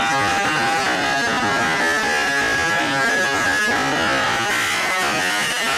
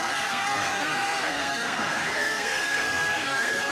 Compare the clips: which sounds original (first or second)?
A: first